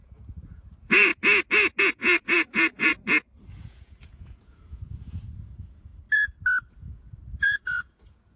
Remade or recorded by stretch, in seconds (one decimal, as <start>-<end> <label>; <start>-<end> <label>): 0.0-1.1 remade; 1.1-1.8 recorded; 1.8-2.9 remade; 2.9-3.5 recorded; 3.5-5.9 remade; 5.9-6.7 recorded; 6.7-8.4 remade